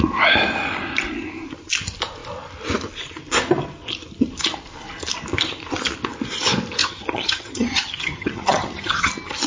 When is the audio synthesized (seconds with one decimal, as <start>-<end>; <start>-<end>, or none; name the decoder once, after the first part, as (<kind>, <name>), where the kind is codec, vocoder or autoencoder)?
6.8-9.1 (vocoder, HiFi-GAN)

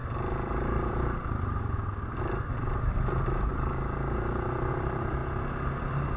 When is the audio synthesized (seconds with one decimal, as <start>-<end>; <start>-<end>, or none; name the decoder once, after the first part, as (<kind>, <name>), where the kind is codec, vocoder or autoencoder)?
0.0-3.5 (vocoder, BigVGAN v2); 4.7-5.2; 5.8-6.2

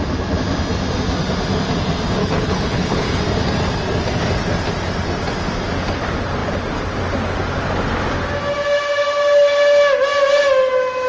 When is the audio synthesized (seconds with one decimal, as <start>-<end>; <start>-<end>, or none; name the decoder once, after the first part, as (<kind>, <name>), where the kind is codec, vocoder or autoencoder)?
2.2-3.2 (codec, HILCodec)

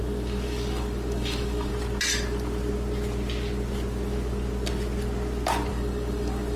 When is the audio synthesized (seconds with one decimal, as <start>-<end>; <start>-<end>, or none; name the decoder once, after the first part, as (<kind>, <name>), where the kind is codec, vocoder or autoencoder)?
0.0-1.7 (codec, DAC); 5.7-6.6